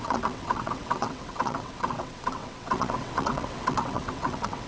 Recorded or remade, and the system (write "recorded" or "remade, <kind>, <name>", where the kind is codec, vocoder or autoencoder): remade, vocoder, WaveNeXt